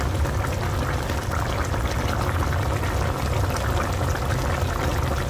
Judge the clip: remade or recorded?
recorded